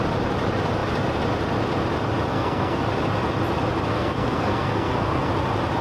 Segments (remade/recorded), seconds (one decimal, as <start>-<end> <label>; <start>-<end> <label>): 0.0-2.3 recorded; 2.3-2.8 remade; 2.8-3.9 recorded; 3.9-5.3 remade; 5.3-5.8 recorded